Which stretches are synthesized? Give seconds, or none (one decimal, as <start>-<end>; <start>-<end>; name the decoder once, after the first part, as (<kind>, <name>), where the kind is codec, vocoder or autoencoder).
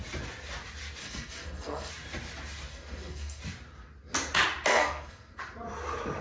1.0-1.9 (codec, SNAC); 2.7-3.4; 4.7-5.4